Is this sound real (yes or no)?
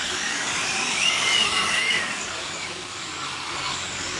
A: no